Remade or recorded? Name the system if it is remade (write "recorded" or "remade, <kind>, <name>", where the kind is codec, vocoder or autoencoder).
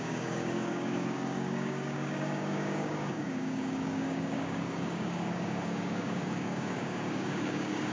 remade, codec, DAC